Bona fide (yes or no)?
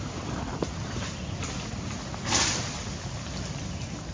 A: yes